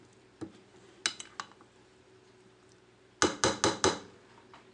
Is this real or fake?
real